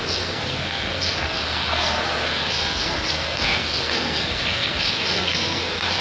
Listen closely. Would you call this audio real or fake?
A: fake